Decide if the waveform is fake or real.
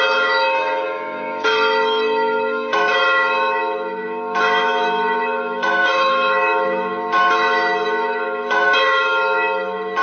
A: fake